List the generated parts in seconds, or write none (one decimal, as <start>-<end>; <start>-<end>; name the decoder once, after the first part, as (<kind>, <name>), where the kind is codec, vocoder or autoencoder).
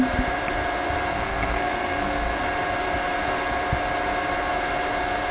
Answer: 1.1-2.4 (codec, SNAC)